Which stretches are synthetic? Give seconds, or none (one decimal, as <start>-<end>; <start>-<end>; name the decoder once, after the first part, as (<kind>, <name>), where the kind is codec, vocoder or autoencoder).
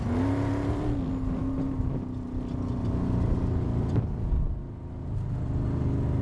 none